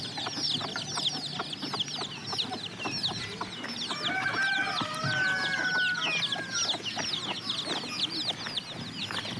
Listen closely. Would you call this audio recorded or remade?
recorded